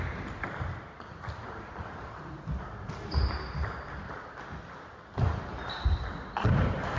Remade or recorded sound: recorded